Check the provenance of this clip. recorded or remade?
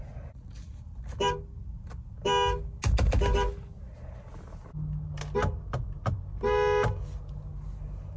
recorded